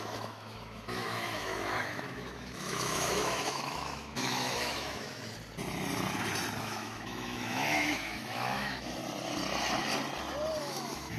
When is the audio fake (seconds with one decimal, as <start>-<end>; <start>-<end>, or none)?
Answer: 0.0-5.2; 6.6-9.0; 10.6-11.2